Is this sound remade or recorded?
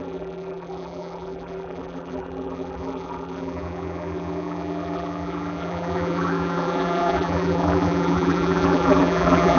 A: remade